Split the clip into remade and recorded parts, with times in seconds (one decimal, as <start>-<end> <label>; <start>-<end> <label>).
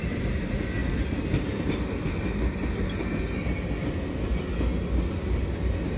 0.0-6.0 recorded